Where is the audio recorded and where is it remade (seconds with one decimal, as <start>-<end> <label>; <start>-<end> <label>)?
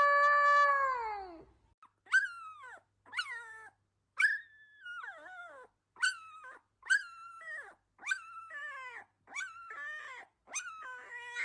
0.0-11.4 recorded